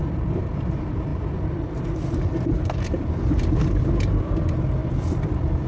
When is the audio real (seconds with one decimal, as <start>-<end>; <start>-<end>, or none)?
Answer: none